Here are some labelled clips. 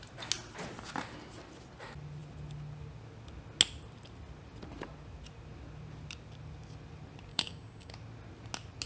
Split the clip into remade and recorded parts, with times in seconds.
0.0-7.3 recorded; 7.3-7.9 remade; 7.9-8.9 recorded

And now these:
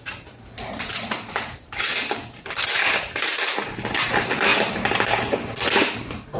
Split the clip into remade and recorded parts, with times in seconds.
0.0-6.4 recorded

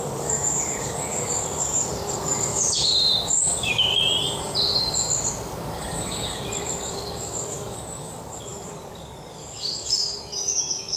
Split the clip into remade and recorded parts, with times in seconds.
0.0-3.9 remade; 3.9-4.8 recorded; 4.8-11.0 remade